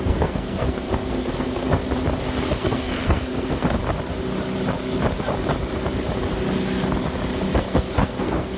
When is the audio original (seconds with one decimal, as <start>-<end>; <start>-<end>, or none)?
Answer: 1.8-2.5; 3.8-7.6